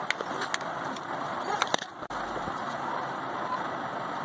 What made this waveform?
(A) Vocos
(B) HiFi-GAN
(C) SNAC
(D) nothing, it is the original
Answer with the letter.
D